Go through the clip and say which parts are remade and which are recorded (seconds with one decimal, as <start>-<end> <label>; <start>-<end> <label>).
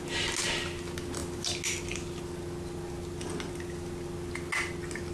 0.0-5.1 recorded